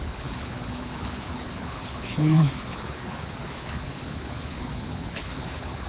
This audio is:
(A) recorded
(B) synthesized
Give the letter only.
B